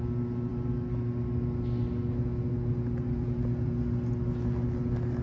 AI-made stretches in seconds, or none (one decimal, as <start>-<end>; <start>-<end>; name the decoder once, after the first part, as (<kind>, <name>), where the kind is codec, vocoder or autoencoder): none